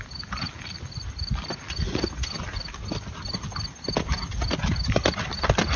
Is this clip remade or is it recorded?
recorded